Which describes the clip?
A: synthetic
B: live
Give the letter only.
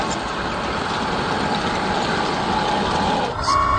B